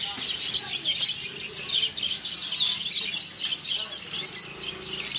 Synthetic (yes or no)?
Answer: no